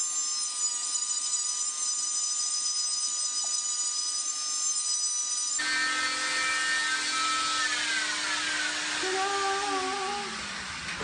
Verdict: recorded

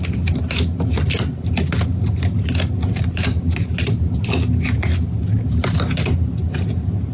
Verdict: recorded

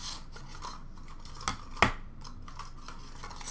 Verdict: recorded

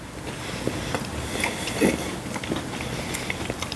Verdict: recorded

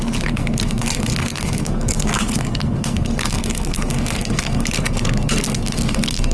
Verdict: remade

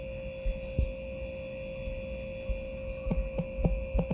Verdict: recorded